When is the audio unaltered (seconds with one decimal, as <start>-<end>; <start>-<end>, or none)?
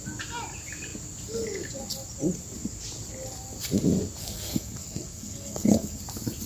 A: 0.0-4.2; 6.0-6.5